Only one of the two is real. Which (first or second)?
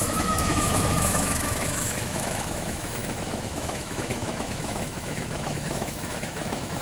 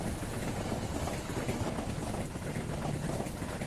second